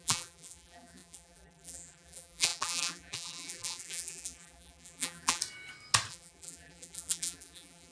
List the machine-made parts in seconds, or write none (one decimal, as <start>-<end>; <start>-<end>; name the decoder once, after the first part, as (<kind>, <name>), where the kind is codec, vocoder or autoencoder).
0.0-5.4 (vocoder, BigVGAN v2); 6.1-7.9